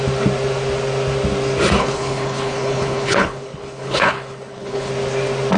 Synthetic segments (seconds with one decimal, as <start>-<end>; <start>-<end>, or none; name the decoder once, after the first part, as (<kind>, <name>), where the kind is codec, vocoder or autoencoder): 1.8-4.9 (codec, HILCodec)